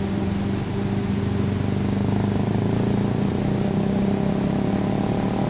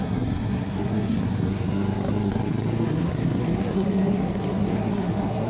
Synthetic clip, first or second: second